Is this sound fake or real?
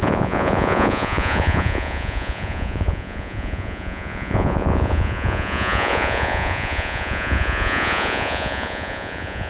fake